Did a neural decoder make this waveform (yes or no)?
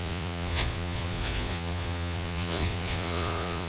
yes